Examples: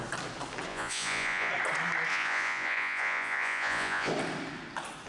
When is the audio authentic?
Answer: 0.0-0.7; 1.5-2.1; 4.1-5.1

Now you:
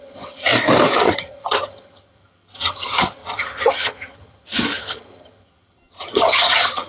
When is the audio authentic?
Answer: 0.5-1.0

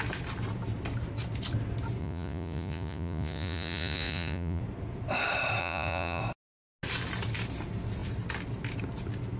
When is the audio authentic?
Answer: 0.0-2.0; 4.6-5.6; 6.2-9.4